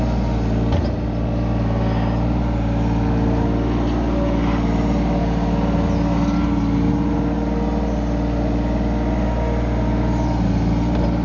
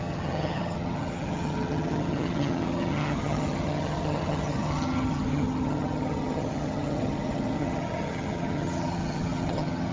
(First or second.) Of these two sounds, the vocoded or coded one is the second